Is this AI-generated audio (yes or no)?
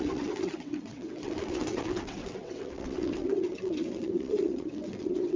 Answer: yes